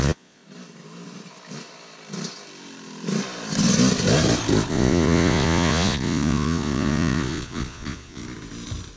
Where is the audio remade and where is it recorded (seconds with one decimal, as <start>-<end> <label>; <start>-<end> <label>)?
0.0-0.4 remade; 0.4-4.7 recorded; 4.7-8.2 remade; 8.2-9.0 recorded